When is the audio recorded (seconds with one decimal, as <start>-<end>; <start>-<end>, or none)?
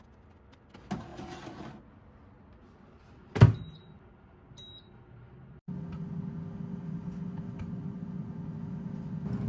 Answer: 0.0-9.5